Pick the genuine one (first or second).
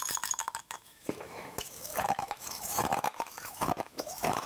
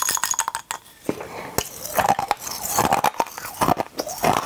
second